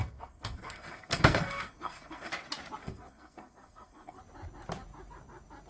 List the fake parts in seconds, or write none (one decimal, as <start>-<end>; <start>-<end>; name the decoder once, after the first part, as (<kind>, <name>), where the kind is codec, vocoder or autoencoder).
0.0-2.3 (codec, SNAC); 2.8-4.2